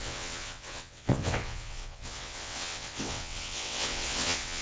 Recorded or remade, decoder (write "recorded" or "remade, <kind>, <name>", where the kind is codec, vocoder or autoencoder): remade, vocoder, WaveNeXt